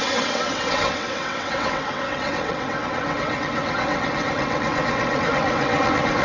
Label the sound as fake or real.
fake